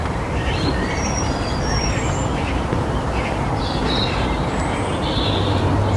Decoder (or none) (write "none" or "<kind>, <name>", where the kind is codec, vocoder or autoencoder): vocoder, BigVGAN v2